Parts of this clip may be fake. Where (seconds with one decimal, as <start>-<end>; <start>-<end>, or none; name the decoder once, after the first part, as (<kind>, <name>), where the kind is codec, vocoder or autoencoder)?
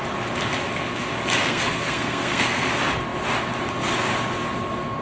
1.4-2.7 (codec, SNAC)